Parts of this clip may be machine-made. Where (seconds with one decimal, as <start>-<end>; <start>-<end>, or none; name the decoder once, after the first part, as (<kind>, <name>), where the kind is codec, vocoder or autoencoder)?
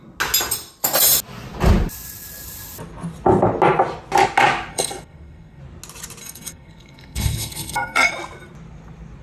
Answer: 4.7-5.6 (codec, SNAC); 6.2-8.1